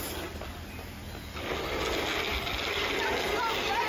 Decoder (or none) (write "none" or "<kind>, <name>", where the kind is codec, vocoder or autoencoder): none